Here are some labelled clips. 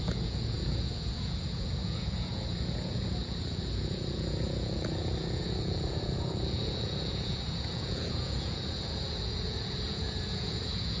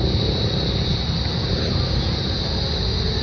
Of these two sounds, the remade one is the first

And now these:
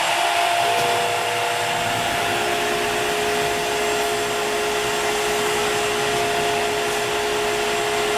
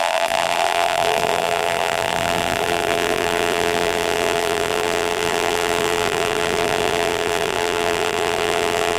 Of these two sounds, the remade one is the second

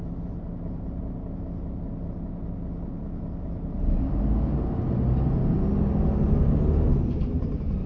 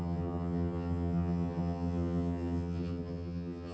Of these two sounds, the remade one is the second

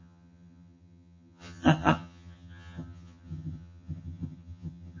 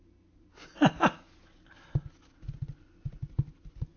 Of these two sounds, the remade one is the first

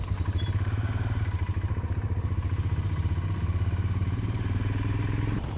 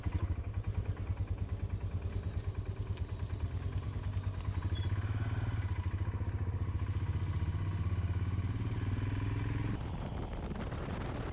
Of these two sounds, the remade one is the first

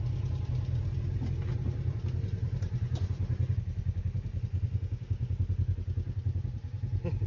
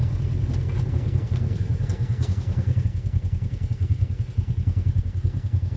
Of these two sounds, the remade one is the second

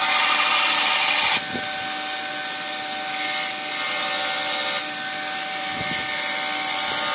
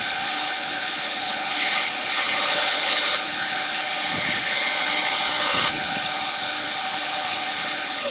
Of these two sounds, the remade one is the second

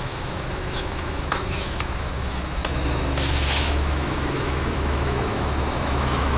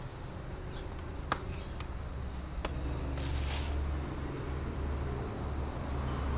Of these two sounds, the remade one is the first